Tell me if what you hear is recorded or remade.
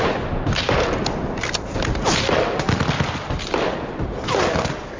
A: recorded